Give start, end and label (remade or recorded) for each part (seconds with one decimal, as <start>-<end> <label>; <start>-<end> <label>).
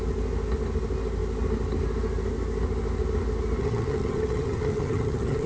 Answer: 0.0-3.6 recorded; 3.6-5.5 remade